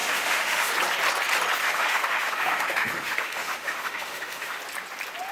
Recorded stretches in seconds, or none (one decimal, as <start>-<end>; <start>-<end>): 0.7-1.6; 4.6-5.3